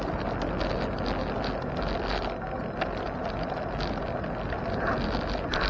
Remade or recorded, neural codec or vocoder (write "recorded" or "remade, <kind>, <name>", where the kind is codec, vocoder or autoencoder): recorded